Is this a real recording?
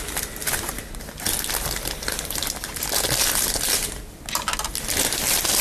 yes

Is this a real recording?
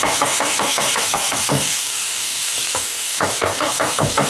no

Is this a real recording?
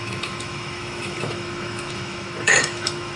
no